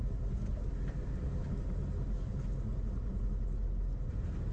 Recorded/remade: recorded